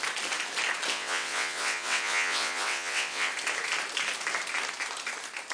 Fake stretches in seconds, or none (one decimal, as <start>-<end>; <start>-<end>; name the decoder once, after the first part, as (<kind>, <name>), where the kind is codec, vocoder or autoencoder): 0.9-3.3 (vocoder, WaveNeXt)

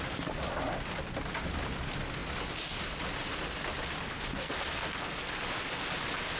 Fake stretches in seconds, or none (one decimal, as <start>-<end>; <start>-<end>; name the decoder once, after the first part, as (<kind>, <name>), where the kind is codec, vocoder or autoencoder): 4.3-5.3 (codec, SNAC)

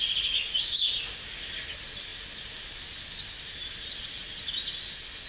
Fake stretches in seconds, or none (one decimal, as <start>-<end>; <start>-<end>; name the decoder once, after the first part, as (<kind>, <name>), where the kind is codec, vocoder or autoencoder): none

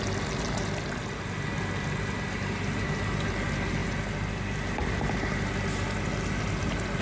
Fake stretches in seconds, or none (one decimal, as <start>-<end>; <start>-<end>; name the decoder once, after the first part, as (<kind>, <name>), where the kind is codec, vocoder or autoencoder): none